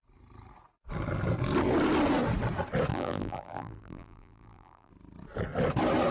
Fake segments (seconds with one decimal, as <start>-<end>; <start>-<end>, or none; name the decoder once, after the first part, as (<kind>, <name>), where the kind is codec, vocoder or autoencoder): 2.9-4.9 (vocoder, BigVGAN v2)